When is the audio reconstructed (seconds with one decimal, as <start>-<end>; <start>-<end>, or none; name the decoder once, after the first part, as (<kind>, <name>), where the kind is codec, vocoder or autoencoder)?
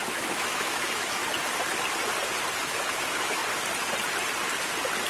0.0-1.2 (autoencoder, DAC-VAE); 2.6-3.4